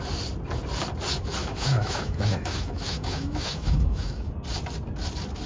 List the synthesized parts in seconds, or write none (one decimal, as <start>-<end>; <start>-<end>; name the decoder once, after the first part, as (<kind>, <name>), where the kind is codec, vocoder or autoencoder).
1.4-4.3 (autoencoder, DAC-VAE)